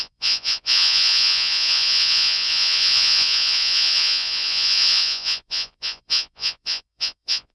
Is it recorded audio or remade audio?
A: remade